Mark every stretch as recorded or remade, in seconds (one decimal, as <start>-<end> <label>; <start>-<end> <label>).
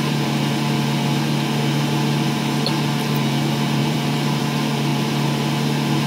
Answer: 0.0-3.8 recorded; 3.8-4.4 remade; 4.4-6.1 recorded